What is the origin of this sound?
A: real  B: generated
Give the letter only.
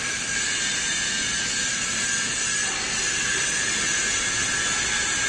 A